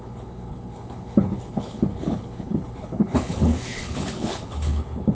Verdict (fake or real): fake